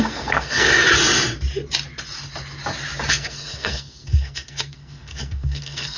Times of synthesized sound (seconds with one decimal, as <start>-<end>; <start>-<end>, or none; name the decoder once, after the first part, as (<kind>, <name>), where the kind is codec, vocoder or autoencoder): 0.0-0.7 (codec, SNAC); 3.1-6.0

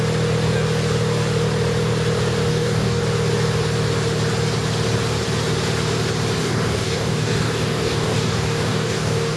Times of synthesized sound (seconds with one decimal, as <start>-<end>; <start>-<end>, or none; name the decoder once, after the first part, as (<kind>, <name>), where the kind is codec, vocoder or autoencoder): 2.5-3.0 (codec, DAC); 6.4-9.4

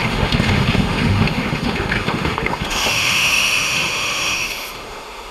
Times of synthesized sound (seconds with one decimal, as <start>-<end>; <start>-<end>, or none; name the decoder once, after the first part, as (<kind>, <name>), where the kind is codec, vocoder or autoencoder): 0.0-5.3 (autoencoder, DAC-VAE)

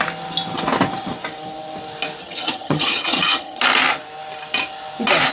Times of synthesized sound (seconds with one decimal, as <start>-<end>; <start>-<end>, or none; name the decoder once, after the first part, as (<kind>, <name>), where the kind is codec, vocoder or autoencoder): 2.2-3.6 (vocoder, HiFi-GAN)

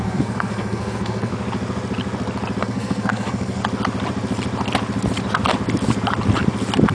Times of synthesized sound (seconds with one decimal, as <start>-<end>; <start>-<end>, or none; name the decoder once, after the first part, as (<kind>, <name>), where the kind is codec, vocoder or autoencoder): 0.0-1.3 (codec, SNAC); 2.6-3.6

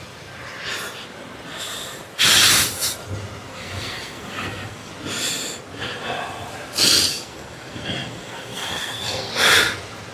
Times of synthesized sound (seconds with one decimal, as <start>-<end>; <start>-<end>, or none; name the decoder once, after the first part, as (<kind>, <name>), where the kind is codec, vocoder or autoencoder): 3.5-4.9 (codec, SNAC); 7.1-9.3